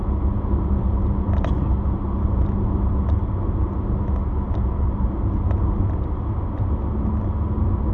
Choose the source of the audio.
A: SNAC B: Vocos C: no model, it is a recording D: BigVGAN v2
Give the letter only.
C